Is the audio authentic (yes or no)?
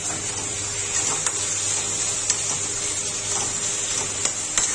yes